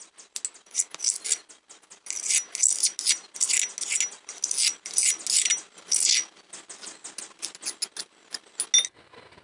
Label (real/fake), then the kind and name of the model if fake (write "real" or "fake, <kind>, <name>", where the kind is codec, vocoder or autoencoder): real